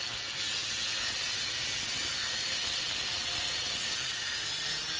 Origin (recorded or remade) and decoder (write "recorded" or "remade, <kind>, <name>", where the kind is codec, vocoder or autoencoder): recorded